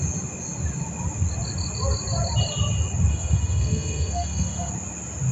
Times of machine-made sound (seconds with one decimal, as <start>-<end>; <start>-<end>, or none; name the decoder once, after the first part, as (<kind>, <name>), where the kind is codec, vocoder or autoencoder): 3.1-4.7 (codec, SNAC)